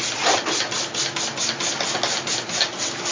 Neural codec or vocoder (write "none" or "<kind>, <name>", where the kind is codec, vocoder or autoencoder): none